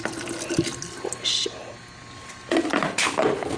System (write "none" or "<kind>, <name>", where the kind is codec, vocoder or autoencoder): none